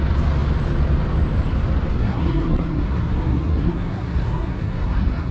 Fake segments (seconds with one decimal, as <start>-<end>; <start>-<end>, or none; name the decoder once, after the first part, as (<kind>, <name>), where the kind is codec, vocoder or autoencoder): 1.9-5.3 (codec, SNAC)